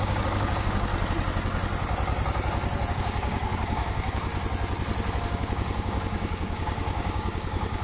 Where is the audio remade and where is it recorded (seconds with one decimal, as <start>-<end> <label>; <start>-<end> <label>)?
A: 0.0-0.9 remade; 0.9-2.9 recorded; 2.9-4.3 remade; 4.3-5.2 recorded; 5.2-7.8 remade